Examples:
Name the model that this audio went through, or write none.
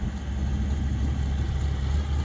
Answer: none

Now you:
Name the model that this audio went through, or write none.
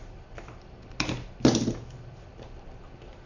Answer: none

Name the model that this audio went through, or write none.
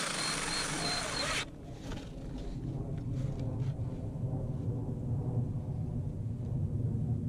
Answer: none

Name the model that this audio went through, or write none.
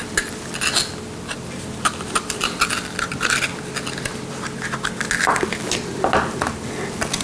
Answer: none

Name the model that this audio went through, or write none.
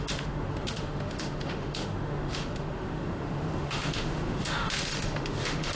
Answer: autoencoder, DAC-VAE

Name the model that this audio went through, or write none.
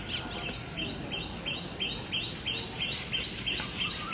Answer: none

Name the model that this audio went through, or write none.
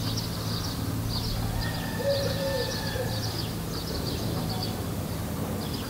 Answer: none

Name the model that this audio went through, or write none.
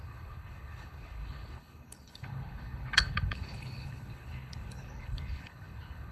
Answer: codec, HILCodec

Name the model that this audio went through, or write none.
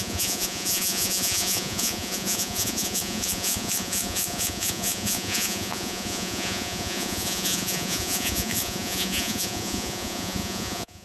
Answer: vocoder, Vocos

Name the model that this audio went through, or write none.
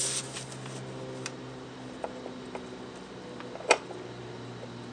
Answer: none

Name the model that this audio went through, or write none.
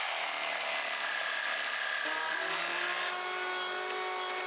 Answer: none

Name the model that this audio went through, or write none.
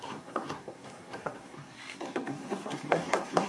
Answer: codec, SNAC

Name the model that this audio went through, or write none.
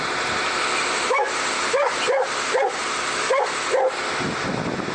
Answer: none